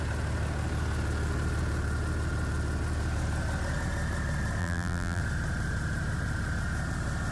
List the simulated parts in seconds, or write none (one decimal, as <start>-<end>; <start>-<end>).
4.6-5.2